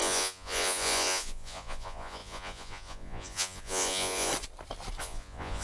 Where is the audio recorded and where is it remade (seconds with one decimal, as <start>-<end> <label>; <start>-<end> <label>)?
0.0-4.3 remade; 4.3-5.0 recorded; 5.0-5.6 remade